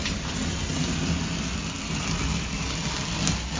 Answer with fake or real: real